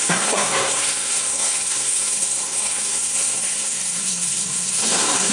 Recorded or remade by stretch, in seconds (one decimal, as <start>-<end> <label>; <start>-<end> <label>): 0.0-5.3 remade